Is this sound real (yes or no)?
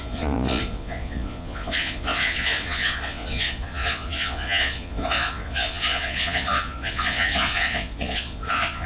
no